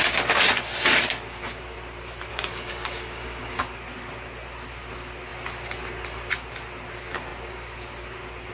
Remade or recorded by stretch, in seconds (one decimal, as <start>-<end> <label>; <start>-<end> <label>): 0.0-2.3 recorded; 2.3-3.6 remade; 3.6-8.5 recorded